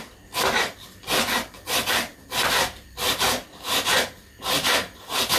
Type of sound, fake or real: fake